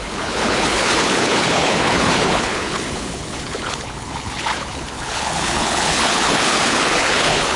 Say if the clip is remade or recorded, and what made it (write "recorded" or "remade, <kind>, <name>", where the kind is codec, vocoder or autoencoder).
remade, codec, HILCodec